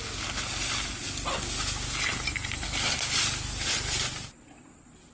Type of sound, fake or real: real